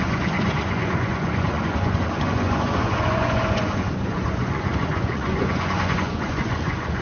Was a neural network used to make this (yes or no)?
yes